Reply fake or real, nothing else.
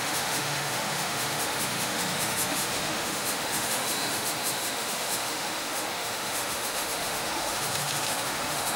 fake